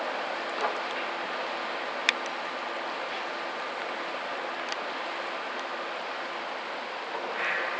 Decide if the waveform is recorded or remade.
recorded